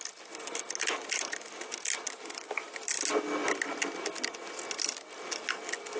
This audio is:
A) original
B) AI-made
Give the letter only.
A